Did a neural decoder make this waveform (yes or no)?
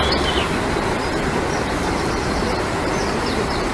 no